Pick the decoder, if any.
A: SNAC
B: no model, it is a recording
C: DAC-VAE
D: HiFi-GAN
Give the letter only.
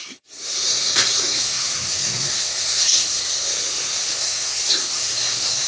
A